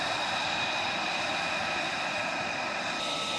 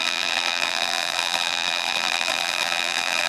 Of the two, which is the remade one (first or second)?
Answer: second